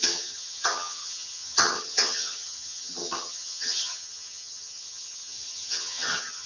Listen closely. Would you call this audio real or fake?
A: fake